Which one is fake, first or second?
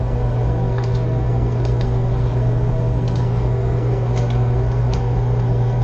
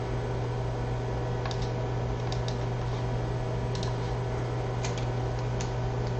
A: first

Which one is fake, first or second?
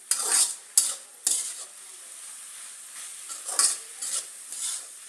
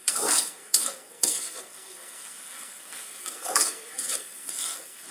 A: second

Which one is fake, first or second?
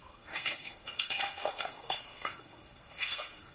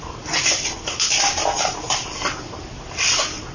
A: first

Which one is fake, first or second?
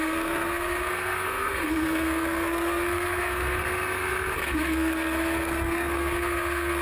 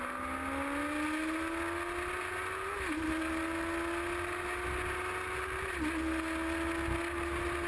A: first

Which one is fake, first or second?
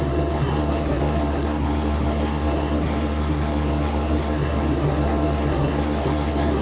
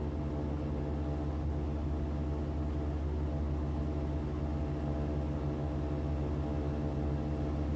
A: first